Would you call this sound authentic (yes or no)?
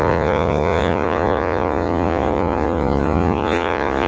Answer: no